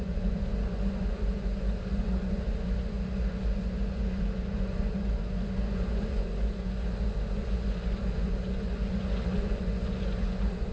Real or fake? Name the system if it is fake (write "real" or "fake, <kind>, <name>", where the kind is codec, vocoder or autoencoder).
fake, vocoder, Vocos